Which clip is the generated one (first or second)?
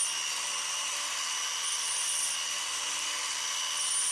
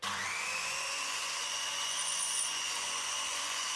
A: second